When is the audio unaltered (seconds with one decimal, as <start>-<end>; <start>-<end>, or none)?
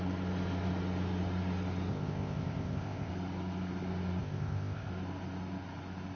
0.0-1.9; 3.1-4.2; 4.9-6.2